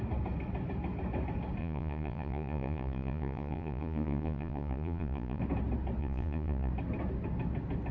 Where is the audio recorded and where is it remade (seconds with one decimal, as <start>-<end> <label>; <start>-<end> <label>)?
0.0-1.6 recorded; 1.6-5.4 remade; 5.4-6.0 recorded; 6.0-6.7 remade; 6.7-7.9 recorded